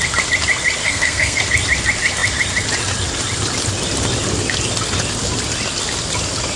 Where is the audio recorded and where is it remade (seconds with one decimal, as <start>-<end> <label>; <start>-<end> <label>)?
0.0-0.8 recorded; 0.8-1.4 remade; 1.4-6.6 recorded